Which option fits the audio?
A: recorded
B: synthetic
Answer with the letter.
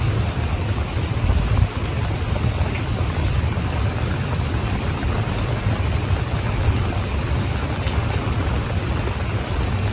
A